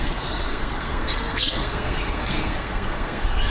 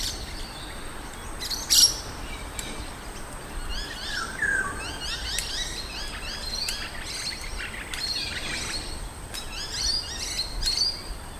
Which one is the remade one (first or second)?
first